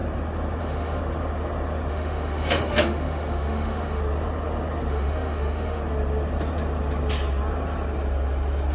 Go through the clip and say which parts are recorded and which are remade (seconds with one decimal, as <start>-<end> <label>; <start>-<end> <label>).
0.0-0.6 recorded; 0.6-1.0 remade; 1.0-1.9 recorded; 1.9-4.0 remade; 4.0-4.9 recorded; 4.9-5.8 remade; 5.8-8.7 recorded